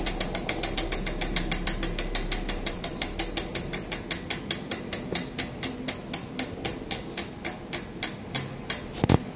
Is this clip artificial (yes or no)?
no